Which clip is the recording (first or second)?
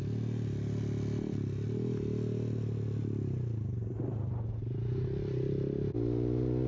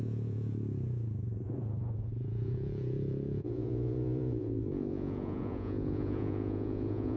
first